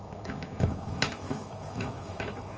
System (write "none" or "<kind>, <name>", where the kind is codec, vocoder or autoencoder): autoencoder, DAC-VAE